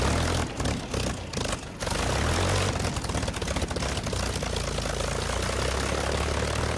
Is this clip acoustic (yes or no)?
yes